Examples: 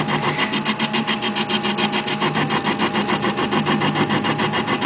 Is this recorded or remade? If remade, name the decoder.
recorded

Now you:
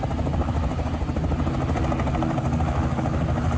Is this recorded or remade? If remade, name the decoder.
recorded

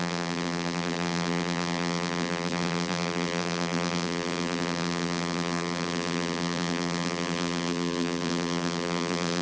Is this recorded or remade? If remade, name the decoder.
remade, vocoder, BigVGAN v2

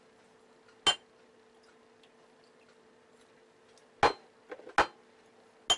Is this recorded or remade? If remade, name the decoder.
recorded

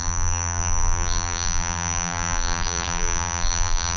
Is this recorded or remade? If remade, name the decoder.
remade, vocoder, BigVGAN v2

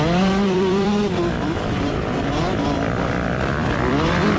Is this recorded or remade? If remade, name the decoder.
remade, vocoder, BigVGAN v2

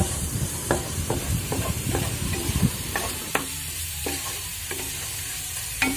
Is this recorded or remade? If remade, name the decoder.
remade, vocoder, BigVGAN v2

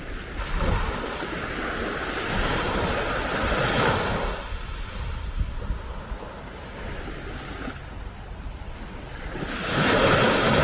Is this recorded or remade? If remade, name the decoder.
recorded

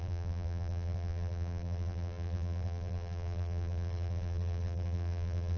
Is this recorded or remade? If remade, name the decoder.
remade, vocoder, BigVGAN v2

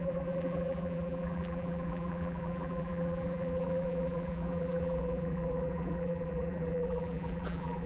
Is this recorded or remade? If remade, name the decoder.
remade, vocoder, BigVGAN v2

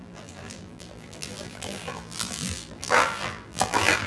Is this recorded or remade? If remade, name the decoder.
remade, vocoder, BigVGAN v2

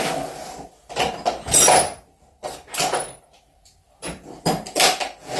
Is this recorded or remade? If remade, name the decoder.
remade, vocoder, BigVGAN v2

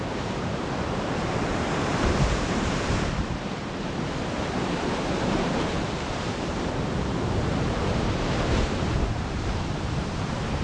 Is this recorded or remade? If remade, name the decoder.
remade, vocoder, BigVGAN v2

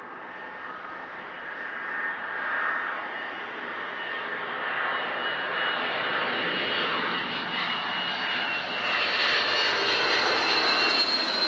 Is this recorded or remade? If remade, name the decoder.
recorded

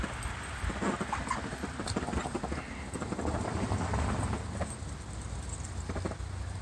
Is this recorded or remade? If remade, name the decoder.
recorded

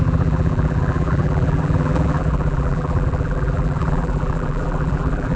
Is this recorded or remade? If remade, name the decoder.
remade, vocoder, BigVGAN v2